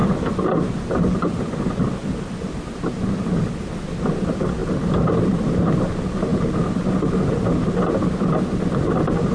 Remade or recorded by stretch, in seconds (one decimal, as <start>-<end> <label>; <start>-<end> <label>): 0.0-4.6 recorded; 4.6-5.7 remade; 5.7-9.3 recorded